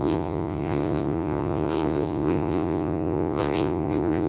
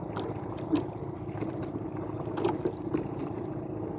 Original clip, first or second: second